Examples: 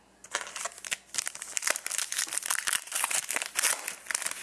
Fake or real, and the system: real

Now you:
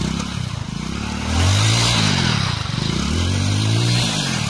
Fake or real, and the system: real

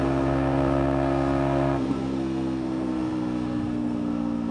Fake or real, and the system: fake, codec, SNAC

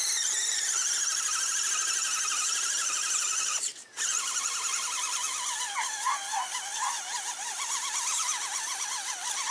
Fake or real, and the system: real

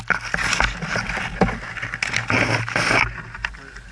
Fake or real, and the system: real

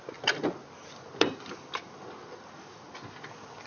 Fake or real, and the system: real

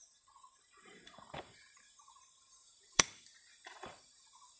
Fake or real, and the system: fake, vocoder, BigVGAN v2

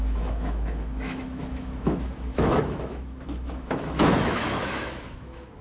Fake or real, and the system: fake, autoencoder, DAC-VAE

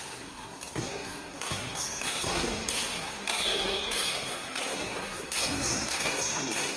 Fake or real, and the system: fake, codec, SNAC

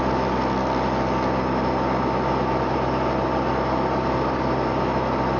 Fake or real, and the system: real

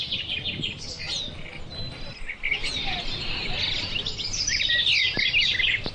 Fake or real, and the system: real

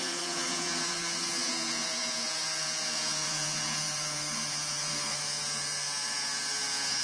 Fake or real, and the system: fake, vocoder, Vocos